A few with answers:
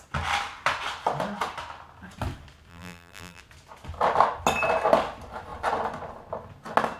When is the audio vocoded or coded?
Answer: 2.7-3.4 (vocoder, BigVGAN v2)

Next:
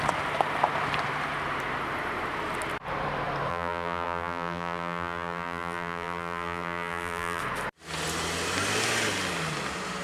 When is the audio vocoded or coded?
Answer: 3.5-7.4 (vocoder, BigVGAN v2)

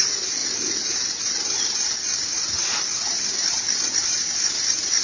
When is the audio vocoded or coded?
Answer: none

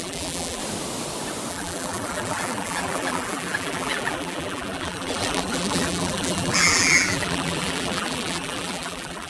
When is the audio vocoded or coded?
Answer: 0.0-0.6 (vocoder, BigVGAN v2); 1.5-9.3